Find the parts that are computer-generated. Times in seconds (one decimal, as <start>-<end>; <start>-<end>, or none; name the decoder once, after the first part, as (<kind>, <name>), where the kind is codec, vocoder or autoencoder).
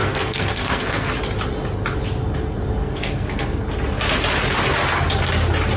0.0-1.1 (codec, SNAC); 2.8-3.6